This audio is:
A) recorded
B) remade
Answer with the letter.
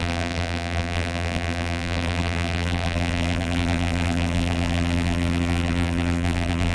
B